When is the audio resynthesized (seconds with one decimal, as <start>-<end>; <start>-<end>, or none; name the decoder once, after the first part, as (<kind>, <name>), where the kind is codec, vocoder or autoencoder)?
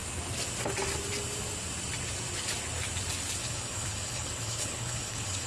3.4-5.5 (codec, HILCodec)